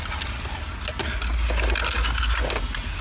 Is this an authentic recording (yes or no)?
yes